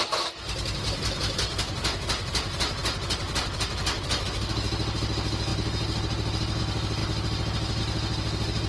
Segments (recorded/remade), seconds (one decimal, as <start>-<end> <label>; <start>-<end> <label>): 0.0-8.7 recorded